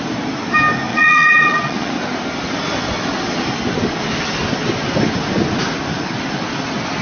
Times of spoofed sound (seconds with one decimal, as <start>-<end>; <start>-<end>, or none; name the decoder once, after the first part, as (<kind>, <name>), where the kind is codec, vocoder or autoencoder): 0.9-1.9 (vocoder, Vocos)